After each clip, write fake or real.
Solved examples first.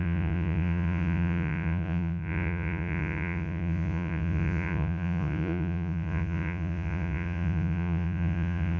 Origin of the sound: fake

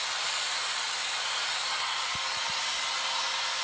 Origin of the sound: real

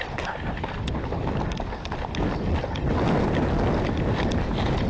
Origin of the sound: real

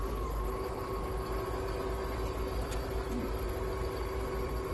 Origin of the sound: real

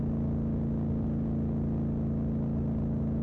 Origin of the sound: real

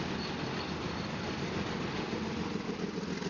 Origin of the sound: real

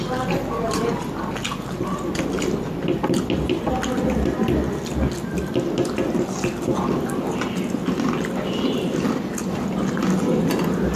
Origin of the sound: real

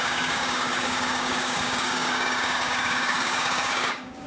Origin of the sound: fake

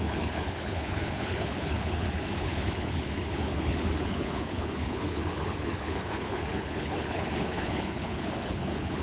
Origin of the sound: fake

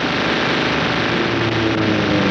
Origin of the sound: real